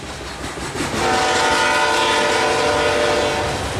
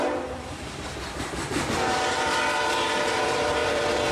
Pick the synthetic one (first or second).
second